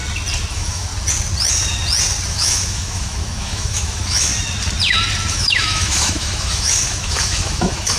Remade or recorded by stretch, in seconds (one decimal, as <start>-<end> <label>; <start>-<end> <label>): 0.0-0.5 recorded; 0.5-0.9 remade; 0.9-2.3 recorded; 2.3-4.3 remade; 4.3-5.3 recorded; 5.3-8.0 remade